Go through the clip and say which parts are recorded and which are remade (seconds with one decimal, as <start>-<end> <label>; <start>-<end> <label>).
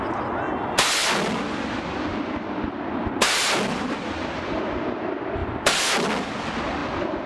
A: 0.0-1.0 recorded; 1.0-4.6 remade; 4.6-5.4 recorded; 5.4-5.9 remade; 5.9-7.3 recorded